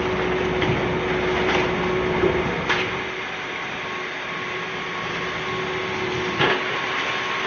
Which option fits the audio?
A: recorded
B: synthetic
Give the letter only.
A